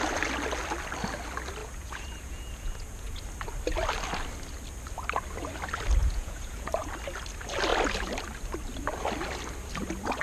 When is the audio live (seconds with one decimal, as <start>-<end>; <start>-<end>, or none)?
0.0-1.6; 3.2-6.0; 6.9-10.2

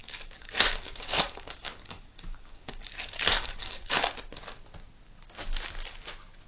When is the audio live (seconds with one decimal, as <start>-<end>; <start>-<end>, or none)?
3.9-6.5

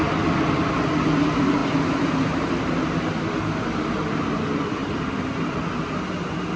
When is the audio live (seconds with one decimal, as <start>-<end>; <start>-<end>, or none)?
0.0-4.8; 5.8-6.6

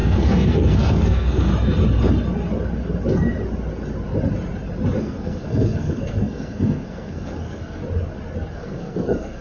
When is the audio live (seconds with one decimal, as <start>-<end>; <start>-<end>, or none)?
1.5-5.0; 7.8-8.5